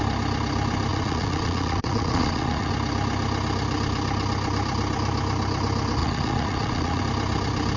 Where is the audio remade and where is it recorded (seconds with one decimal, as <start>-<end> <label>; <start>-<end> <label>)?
0.0-0.9 recorded; 0.9-2.7 remade; 2.7-6.0 recorded; 6.0-7.0 remade; 7.0-7.8 recorded